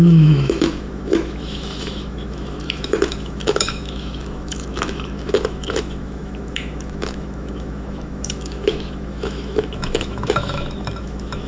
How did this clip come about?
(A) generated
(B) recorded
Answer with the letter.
A